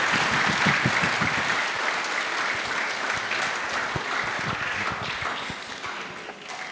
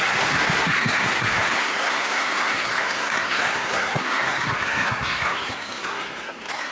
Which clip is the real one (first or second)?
first